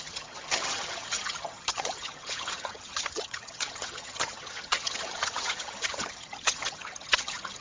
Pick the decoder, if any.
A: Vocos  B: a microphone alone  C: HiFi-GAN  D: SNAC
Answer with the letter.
C